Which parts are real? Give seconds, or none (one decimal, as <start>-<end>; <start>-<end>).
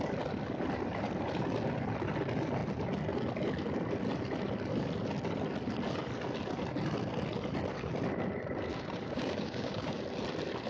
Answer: 0.0-8.7; 10.0-10.7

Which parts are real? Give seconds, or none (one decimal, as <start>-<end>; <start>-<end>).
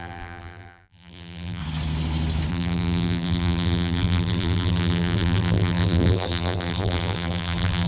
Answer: 1.6-2.5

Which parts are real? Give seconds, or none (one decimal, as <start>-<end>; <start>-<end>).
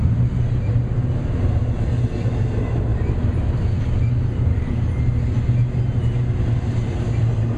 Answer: 0.0-4.5; 5.0-7.6